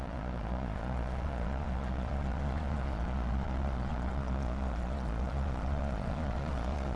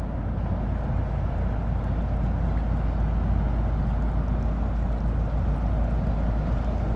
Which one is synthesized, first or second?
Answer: first